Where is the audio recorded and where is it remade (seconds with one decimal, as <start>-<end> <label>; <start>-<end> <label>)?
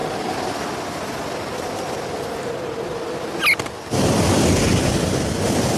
0.0-5.8 recorded